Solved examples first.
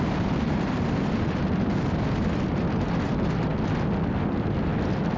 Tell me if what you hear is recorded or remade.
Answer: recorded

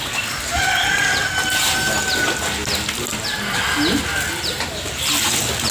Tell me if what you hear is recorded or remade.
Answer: recorded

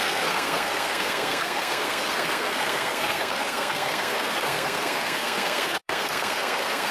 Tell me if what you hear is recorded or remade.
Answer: remade